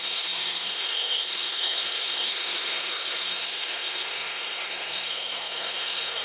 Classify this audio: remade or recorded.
remade